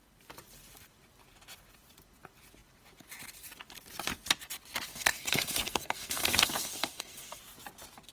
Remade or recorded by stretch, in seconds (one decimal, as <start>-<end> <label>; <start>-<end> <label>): 0.0-4.9 recorded; 4.9-7.4 remade; 7.4-8.1 recorded